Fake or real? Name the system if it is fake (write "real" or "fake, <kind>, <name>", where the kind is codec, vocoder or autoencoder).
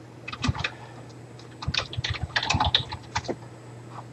real